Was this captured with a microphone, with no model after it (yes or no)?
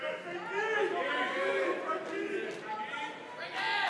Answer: yes